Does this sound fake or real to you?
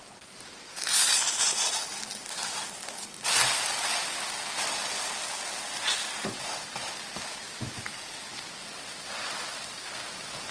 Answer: real